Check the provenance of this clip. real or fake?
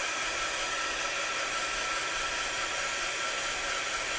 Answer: real